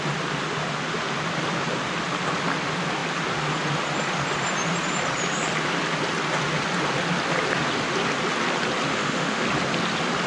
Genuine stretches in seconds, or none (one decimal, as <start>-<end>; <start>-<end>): 0.0-8.9; 9.4-10.3

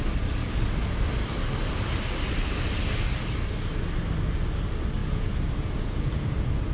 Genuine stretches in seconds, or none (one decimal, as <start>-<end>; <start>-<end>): 0.0-5.0

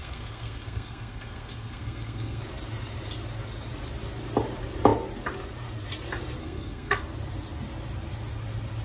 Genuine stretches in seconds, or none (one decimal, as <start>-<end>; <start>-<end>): 2.4-6.4; 7.0-8.8

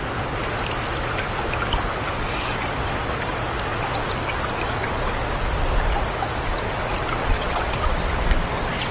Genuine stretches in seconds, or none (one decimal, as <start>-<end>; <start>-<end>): 0.0-7.2; 8.0-8.9

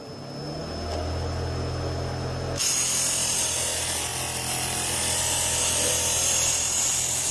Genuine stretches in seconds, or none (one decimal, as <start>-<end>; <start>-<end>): 0.0-7.3

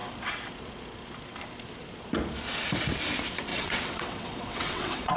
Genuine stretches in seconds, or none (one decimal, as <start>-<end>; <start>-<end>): 0.0-3.5